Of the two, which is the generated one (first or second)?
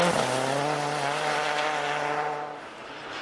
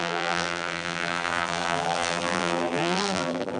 second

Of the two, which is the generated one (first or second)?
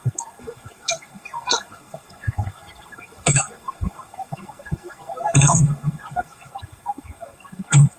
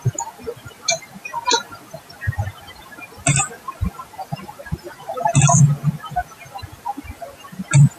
first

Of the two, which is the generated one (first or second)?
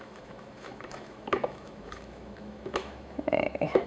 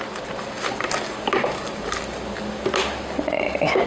first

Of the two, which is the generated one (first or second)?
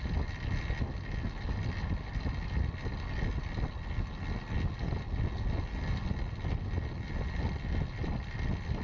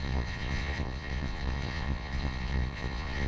second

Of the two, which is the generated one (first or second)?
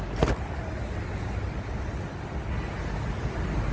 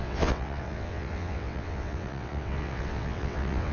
second